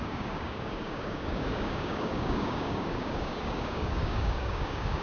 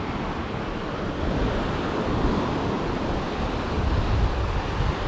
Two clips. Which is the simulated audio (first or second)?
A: first